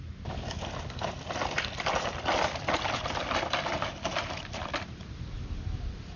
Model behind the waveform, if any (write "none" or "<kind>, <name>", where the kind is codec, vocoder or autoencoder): none